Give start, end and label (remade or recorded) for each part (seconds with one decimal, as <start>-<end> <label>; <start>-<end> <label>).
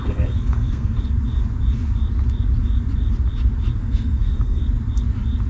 0.0-1.0 remade; 1.0-3.8 recorded; 3.8-4.6 remade; 4.6-5.5 recorded